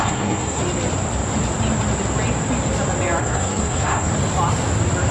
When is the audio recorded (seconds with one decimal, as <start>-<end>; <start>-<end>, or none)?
0.6-3.2; 4.1-5.1